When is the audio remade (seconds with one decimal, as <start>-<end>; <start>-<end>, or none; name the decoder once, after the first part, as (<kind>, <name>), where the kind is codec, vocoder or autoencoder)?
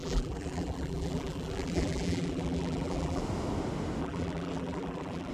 0.0-3.2 (vocoder, BigVGAN v2); 4.0-5.3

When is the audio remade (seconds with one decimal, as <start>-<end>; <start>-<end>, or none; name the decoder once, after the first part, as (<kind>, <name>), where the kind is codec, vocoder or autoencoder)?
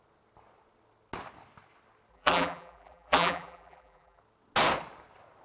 2.1-4.2 (vocoder, BigVGAN v2)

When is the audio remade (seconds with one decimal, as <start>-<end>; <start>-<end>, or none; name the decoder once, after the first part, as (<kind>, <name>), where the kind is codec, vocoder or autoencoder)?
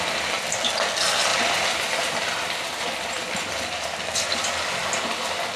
1.3-4.7 (vocoder, BigVGAN v2)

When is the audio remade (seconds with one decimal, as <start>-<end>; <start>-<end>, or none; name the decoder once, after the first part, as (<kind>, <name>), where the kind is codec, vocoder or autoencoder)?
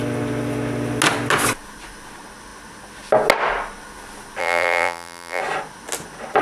4.4-5.4 (vocoder, BigVGAN v2)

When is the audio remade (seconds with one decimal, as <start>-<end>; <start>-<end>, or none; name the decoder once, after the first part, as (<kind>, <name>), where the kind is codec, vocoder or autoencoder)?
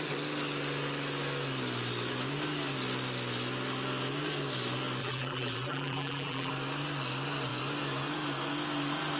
5.0-6.5 (vocoder, BigVGAN v2)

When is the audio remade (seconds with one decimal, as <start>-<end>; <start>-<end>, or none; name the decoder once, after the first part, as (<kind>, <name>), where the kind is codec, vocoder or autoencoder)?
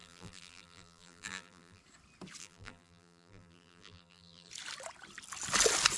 0.0-1.8 (vocoder, BigVGAN v2); 2.4-4.5